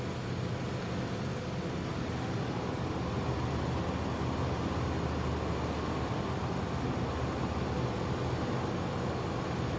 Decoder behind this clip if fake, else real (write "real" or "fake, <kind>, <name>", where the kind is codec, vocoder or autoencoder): real